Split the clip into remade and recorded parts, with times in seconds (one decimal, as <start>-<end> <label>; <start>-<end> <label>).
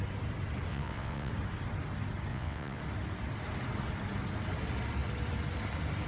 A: 0.0-0.7 recorded; 0.7-1.3 remade; 1.3-2.3 recorded; 2.3-2.8 remade; 2.8-6.1 recorded